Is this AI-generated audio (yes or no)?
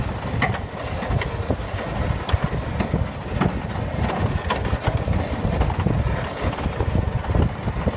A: no